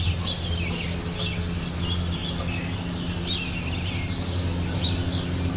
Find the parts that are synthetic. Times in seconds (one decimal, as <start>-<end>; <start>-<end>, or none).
none